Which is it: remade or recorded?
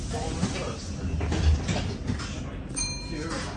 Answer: recorded